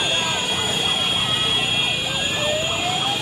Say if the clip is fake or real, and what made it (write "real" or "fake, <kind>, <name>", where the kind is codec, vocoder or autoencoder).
fake, vocoder, BigVGAN v2